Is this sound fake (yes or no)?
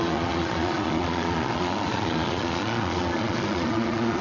yes